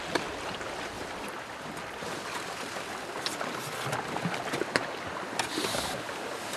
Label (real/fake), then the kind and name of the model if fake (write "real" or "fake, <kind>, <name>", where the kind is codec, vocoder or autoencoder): real